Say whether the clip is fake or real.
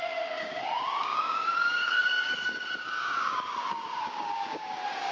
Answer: fake